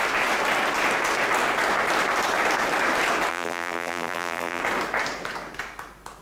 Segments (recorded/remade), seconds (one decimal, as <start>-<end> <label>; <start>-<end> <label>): 0.0-3.3 recorded; 3.3-4.6 remade; 4.6-6.2 recorded